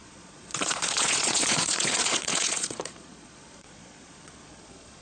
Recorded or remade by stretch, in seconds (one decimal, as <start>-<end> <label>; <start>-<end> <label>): 0.0-5.0 remade

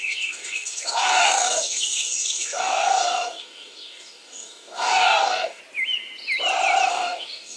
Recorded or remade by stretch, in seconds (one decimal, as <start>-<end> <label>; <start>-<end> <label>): 0.0-5.6 remade; 5.6-6.9 recorded; 6.9-7.6 remade

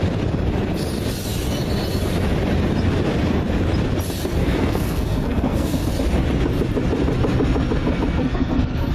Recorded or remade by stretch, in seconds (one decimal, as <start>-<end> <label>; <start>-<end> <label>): 0.0-4.4 recorded; 4.4-5.9 remade; 5.9-8.2 recorded; 8.2-8.9 remade